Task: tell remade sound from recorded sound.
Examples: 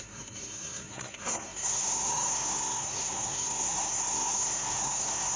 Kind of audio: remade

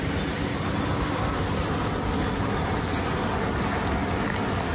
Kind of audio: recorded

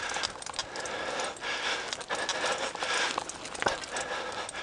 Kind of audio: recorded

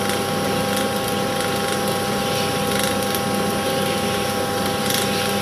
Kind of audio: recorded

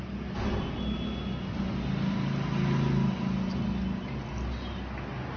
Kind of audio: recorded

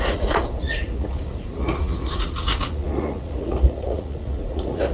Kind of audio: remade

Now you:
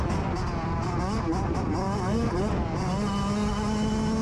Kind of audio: recorded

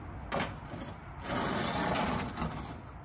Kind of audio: recorded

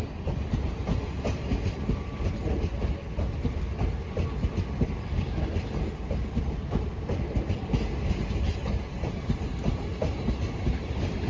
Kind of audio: recorded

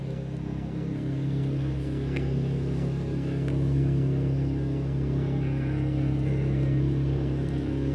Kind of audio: remade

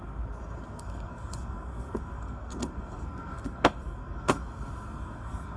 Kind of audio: remade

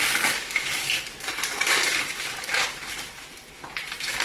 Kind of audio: remade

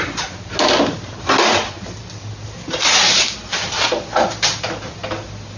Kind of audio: recorded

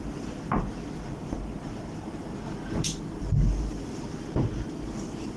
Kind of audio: recorded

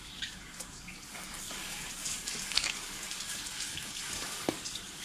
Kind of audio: remade